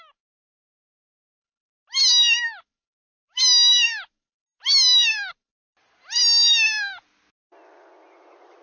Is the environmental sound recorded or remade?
recorded